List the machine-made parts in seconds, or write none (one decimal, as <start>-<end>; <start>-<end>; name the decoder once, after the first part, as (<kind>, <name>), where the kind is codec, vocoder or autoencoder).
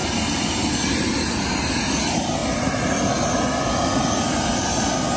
none